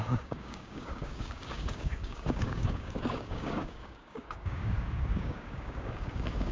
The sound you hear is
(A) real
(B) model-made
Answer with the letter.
B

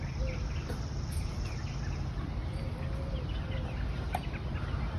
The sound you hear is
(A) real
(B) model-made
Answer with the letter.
A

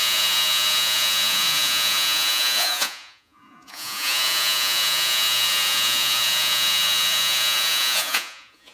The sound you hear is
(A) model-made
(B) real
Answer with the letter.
A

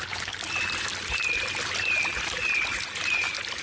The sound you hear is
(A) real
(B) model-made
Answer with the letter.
A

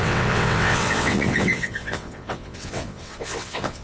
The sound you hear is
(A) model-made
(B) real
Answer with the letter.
A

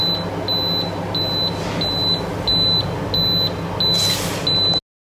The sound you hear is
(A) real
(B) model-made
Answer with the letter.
A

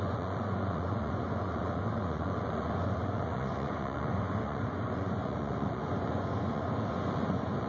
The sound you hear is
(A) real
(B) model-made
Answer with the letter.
B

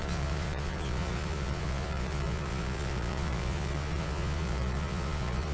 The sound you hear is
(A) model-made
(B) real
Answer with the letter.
A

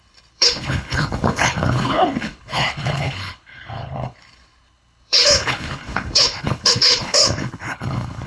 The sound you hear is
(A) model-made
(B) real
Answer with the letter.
A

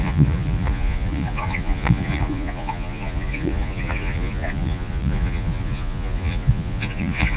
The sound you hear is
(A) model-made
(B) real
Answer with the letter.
A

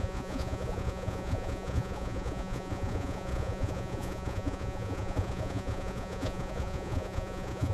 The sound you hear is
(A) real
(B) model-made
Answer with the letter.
B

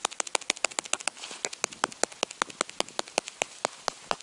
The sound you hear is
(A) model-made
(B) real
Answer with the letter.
B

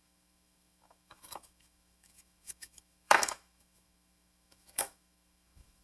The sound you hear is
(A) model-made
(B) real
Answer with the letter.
A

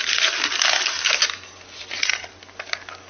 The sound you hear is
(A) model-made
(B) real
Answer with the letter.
B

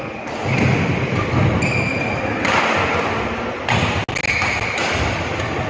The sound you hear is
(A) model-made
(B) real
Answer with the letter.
B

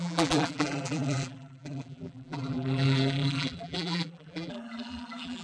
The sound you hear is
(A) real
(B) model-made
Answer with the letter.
B